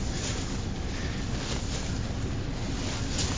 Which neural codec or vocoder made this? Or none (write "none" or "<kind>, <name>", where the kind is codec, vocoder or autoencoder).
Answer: none